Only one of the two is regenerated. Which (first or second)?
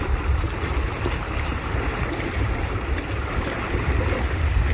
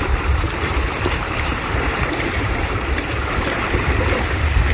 second